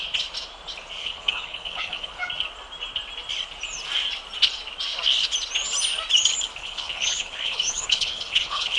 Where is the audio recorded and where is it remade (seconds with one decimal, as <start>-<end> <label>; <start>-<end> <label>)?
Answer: 0.0-1.0 recorded; 1.0-2.2 remade; 2.2-6.6 recorded; 6.6-8.8 remade